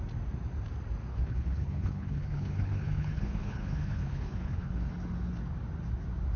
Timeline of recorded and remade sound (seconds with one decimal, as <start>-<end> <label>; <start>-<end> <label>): 0.0-1.1 recorded; 1.1-4.9 remade; 4.9-6.4 recorded